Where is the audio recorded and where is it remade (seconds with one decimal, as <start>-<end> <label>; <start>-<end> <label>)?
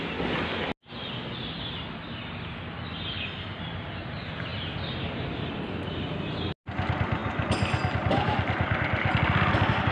0.0-9.9 recorded